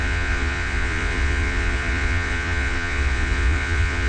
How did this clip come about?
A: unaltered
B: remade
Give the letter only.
B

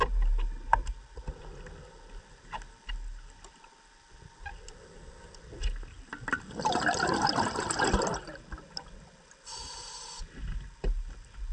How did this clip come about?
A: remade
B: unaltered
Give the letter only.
B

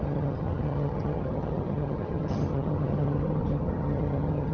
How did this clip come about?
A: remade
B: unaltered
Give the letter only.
A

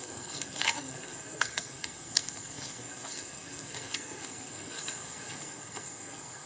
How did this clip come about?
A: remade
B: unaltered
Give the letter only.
A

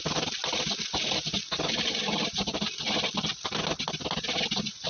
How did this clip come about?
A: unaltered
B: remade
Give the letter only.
A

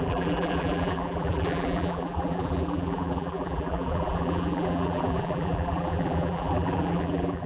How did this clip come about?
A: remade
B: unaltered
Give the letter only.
A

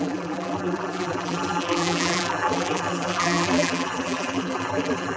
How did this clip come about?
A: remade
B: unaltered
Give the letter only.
A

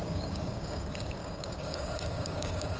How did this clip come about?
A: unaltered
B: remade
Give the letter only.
B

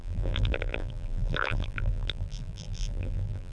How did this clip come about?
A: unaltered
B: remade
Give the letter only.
B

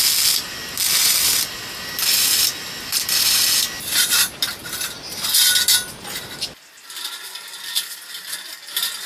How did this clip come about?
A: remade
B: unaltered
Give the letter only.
B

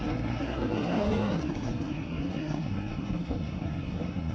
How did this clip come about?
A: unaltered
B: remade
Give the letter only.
B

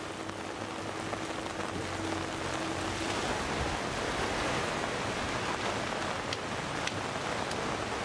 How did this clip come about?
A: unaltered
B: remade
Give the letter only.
A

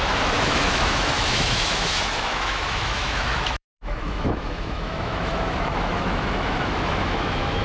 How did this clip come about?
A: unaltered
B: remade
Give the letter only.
B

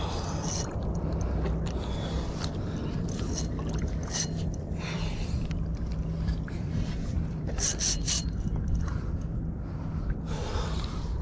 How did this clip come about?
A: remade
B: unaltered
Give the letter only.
A